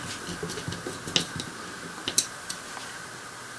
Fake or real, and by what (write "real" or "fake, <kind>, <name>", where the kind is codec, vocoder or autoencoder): real